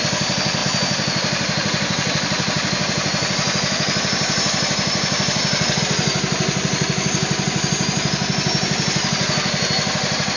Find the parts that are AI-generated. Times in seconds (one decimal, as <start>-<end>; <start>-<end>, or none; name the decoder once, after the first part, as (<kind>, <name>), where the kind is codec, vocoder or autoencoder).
0.6-5.8 (vocoder, BigVGAN v2)